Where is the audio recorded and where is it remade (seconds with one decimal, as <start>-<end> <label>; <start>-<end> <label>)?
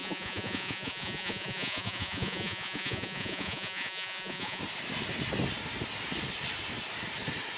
0.0-4.6 remade; 4.6-7.6 recorded